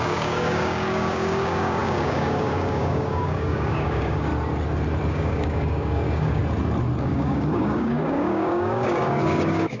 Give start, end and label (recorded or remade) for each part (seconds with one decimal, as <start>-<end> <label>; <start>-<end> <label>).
0.0-4.3 remade; 4.3-5.1 recorded; 5.1-6.4 remade; 6.4-7.0 recorded; 7.0-9.8 remade